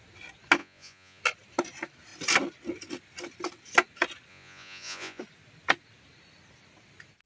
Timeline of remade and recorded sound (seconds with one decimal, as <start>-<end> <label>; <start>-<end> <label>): 0.0-0.6 recorded; 0.6-1.2 remade; 1.2-4.3 recorded; 4.3-5.2 remade; 5.2-7.3 recorded